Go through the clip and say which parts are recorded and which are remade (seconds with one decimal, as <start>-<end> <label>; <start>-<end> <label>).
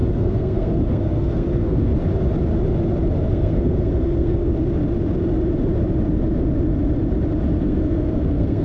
0.0-1.9 remade; 1.9-3.3 recorded; 3.3-4.4 remade; 4.4-7.6 recorded; 7.6-8.6 remade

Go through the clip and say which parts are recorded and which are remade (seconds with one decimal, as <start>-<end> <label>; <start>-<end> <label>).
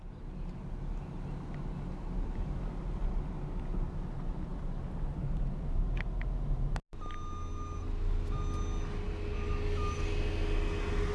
0.0-11.1 recorded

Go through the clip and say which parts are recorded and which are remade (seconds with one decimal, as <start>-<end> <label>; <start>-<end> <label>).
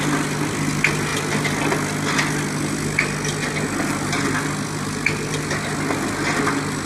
0.0-6.9 recorded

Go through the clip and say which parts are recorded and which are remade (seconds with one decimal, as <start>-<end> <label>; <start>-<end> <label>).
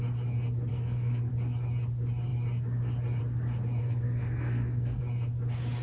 0.0-0.7 recorded; 0.7-1.3 remade; 1.3-3.8 recorded; 3.8-5.0 remade; 5.0-5.8 recorded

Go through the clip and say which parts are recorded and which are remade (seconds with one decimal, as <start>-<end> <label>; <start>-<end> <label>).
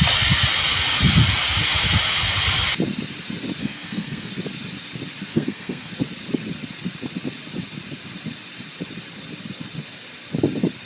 0.0-3.6 recorded; 3.6-4.3 remade; 4.3-5.3 recorded; 5.3-5.9 remade; 5.9-10.9 recorded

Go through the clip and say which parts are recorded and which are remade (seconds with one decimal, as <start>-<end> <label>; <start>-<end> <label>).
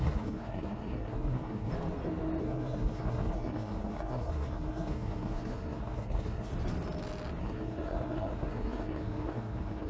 0.0-1.7 remade; 1.7-2.4 recorded; 2.4-6.5 remade; 6.5-7.4 recorded; 7.4-9.9 remade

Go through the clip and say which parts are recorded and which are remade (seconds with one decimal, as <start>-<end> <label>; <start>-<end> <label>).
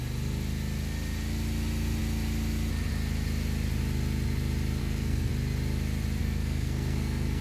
0.0-4.8 recorded; 4.8-5.3 remade; 5.3-6.2 recorded; 6.2-7.4 remade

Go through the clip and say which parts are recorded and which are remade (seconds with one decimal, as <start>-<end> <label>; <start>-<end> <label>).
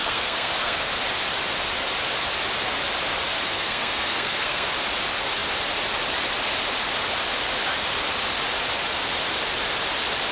0.0-0.9 remade; 0.9-3.3 recorded; 3.3-4.7 remade; 4.7-10.3 recorded